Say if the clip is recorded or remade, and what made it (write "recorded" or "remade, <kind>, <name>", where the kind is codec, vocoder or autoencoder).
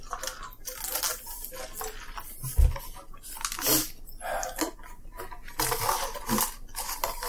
recorded